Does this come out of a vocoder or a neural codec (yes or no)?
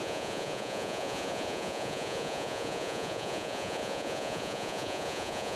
yes